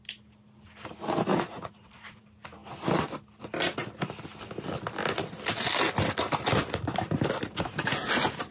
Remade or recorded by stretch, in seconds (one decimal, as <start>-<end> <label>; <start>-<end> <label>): 0.0-1.3 recorded; 1.3-2.2 remade; 2.2-8.5 recorded